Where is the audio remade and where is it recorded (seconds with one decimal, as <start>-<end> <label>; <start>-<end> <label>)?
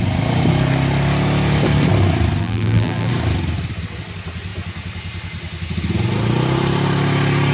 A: 0.0-2.4 recorded; 2.4-3.1 remade; 3.1-7.5 recorded